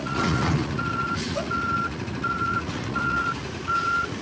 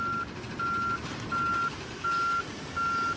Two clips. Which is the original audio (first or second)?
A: second